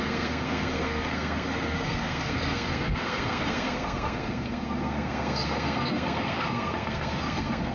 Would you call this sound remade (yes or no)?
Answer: yes